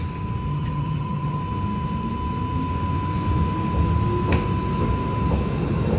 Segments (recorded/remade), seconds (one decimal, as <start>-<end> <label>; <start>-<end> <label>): 0.0-0.5 recorded; 0.5-1.4 remade; 1.4-6.0 recorded